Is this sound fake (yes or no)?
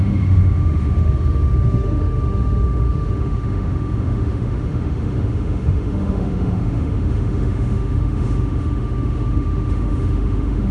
yes